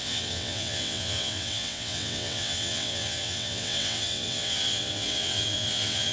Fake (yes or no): yes